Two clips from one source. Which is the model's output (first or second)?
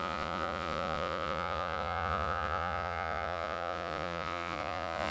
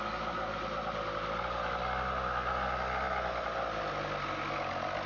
first